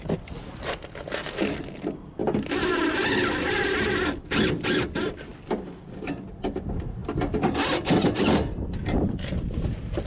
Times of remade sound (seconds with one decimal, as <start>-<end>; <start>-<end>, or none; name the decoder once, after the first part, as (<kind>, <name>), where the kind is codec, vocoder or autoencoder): none